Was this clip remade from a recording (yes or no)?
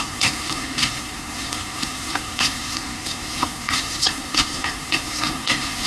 yes